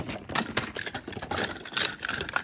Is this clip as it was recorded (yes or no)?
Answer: yes